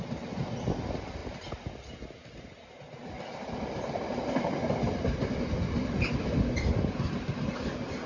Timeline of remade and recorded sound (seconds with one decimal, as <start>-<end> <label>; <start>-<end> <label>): 0.0-8.1 recorded